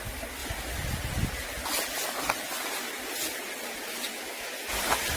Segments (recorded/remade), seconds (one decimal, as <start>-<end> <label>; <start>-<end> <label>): 0.0-4.1 recorded; 4.1-4.6 remade; 4.6-5.2 recorded